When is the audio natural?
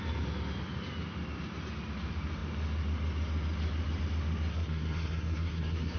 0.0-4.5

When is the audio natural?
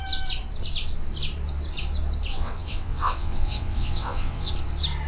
0.0-2.3; 4.5-5.1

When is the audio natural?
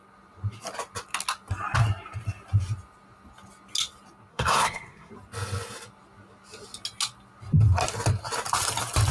0.0-4.3; 5.1-9.1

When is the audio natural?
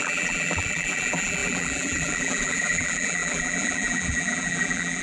none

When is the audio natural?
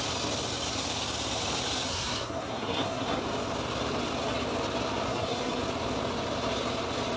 0.0-1.9; 3.2-5.1; 5.6-7.2